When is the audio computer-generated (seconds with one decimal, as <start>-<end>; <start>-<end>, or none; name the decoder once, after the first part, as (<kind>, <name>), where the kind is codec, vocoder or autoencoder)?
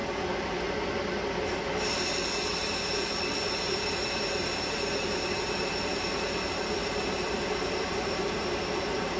3.6-9.2 (vocoder, BigVGAN v2)